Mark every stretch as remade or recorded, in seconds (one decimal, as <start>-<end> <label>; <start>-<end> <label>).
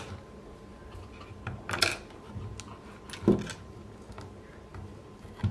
0.0-5.5 recorded